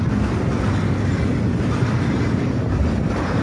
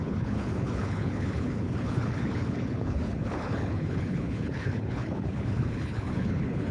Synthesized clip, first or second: second